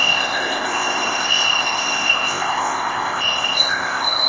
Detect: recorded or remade remade